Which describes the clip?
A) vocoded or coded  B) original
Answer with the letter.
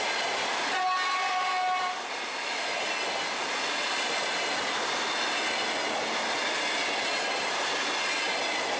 B